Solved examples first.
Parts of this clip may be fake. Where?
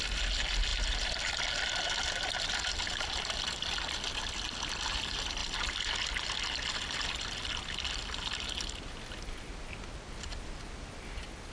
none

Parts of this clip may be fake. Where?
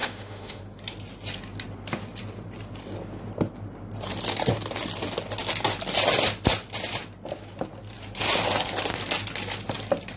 0.0-0.6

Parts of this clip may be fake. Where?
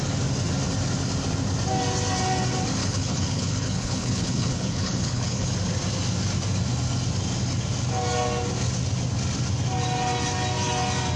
2.8-5.5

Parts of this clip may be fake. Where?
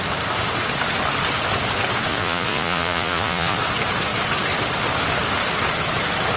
2.1-3.6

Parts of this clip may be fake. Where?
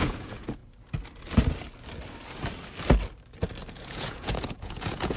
0.0-0.6; 3.7-5.2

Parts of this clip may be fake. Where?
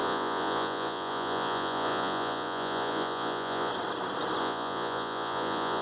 0.0-3.7; 4.4-5.8